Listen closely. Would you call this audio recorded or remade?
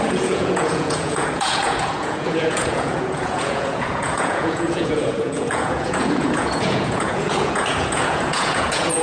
remade